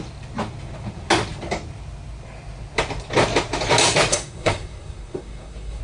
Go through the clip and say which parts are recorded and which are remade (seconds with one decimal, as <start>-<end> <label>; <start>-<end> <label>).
0.0-4.1 recorded; 4.1-5.8 remade